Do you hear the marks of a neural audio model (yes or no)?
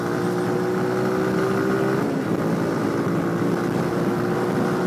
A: no